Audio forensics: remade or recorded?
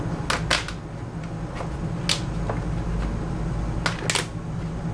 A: recorded